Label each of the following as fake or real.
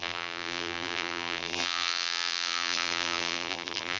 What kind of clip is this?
fake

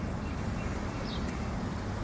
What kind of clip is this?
real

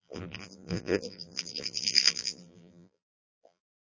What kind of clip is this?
fake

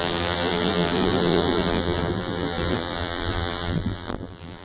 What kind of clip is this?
fake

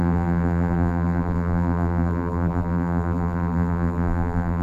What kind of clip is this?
fake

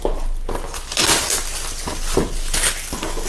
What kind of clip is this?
real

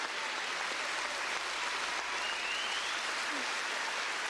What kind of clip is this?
real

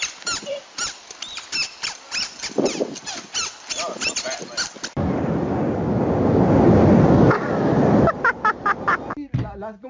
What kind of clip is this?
real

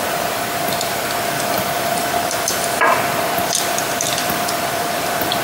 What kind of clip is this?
fake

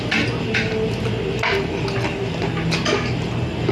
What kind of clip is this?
real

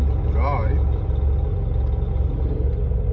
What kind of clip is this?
real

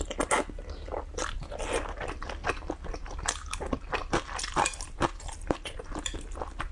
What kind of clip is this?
real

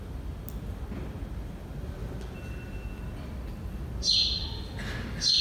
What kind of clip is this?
real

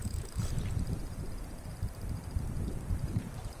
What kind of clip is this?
fake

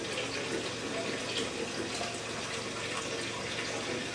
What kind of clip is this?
real